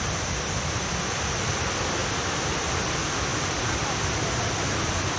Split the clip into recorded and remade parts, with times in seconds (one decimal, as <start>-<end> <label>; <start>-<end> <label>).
0.0-2.0 recorded; 2.0-2.6 remade; 2.6-3.3 recorded; 3.3-4.4 remade; 4.4-5.2 recorded